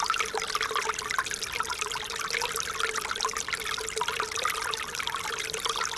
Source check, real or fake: real